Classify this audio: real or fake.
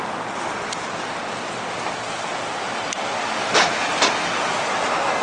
real